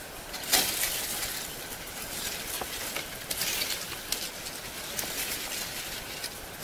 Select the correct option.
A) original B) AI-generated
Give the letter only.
A